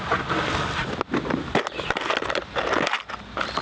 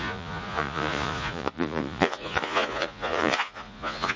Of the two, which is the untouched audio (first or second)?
first